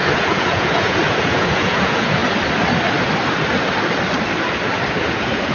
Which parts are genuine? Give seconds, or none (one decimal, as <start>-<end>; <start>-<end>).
2.2-4.9